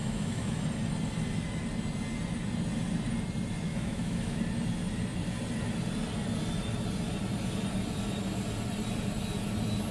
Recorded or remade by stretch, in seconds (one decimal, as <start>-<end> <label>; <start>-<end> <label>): 0.0-0.6 remade; 0.6-3.7 recorded; 3.7-4.4 remade; 4.4-9.9 recorded